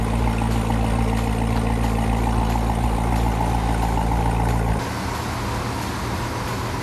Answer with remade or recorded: recorded